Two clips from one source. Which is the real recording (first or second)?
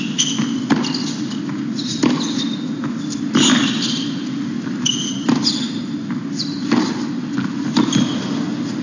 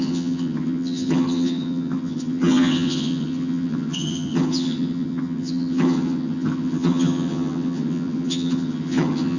first